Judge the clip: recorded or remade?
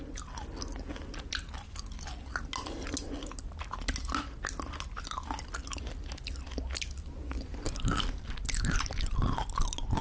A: recorded